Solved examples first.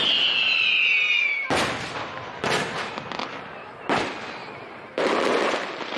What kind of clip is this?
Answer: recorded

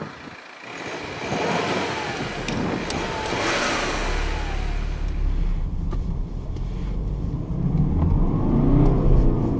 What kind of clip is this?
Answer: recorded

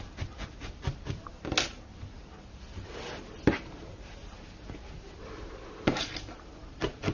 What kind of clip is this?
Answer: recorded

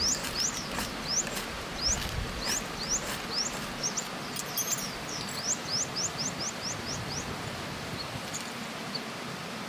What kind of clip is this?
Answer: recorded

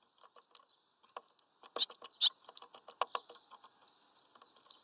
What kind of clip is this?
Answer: recorded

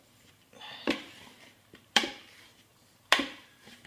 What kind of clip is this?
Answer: remade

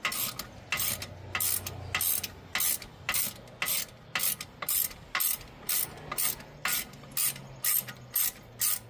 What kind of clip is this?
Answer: recorded